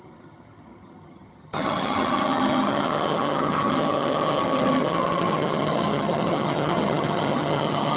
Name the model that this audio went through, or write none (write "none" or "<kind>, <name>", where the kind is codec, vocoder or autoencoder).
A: vocoder, HiFi-GAN